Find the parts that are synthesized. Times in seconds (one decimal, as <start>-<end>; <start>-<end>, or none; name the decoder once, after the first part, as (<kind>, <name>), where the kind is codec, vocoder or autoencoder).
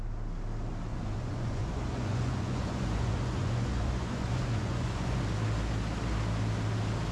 0.9-5.2 (vocoder, Vocos)